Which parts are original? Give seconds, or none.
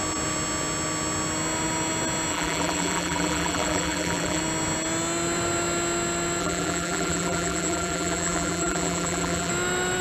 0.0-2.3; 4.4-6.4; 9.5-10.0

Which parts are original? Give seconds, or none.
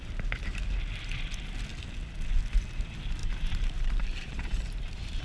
0.0-3.2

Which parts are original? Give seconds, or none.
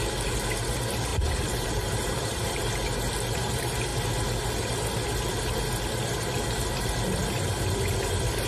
0.0-1.1; 2.6-8.5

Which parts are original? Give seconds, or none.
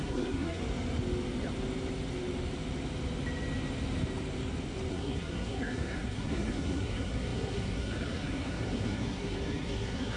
0.6-4.9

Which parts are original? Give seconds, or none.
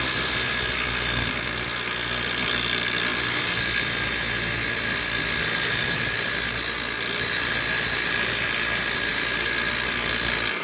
0.0-10.6